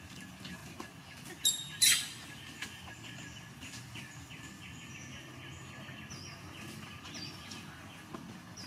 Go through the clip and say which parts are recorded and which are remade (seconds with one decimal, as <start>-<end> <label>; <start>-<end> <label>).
0.0-8.7 recorded